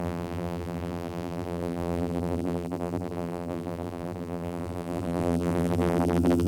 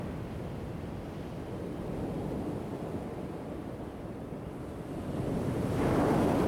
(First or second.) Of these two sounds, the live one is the second